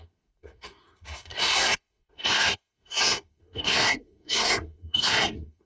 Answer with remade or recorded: remade